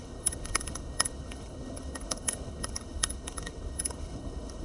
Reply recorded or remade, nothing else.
remade